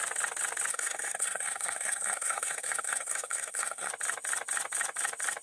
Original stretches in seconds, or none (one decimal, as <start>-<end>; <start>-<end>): 0.0-0.7; 3.9-5.4